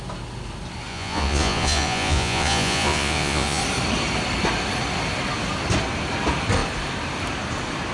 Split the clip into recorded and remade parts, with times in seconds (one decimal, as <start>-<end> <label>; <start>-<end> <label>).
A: 0.0-0.9 recorded; 0.9-3.6 remade; 3.6-7.9 recorded